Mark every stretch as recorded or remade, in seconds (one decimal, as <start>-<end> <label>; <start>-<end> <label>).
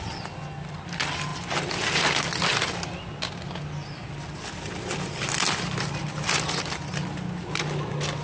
0.0-8.2 recorded